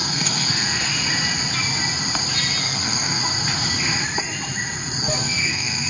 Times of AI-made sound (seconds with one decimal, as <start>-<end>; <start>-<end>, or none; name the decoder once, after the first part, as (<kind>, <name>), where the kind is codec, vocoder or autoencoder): 0.0-0.9 (codec, SNAC); 2.6-3.2; 5.0-5.9